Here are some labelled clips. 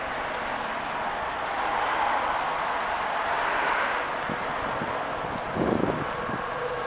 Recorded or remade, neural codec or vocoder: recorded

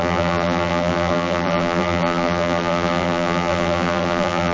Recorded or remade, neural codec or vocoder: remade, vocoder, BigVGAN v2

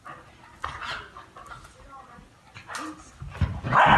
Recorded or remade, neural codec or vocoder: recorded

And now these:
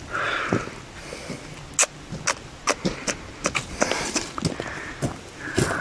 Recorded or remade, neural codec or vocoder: recorded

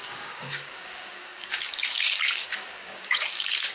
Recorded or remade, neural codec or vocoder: remade, codec, DAC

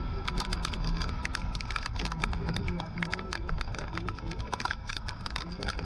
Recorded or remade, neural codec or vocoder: remade, codec, SNAC